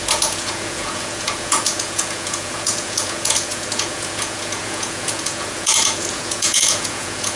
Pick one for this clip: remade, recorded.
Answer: remade